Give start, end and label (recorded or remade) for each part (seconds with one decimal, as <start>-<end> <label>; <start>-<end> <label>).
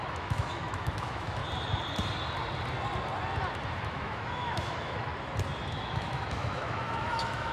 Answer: 0.0-1.4 remade; 1.4-3.8 recorded; 3.8-5.1 remade; 5.1-5.7 recorded; 5.7-7.5 remade